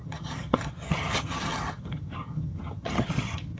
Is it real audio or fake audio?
fake